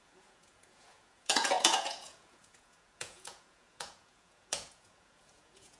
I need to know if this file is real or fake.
fake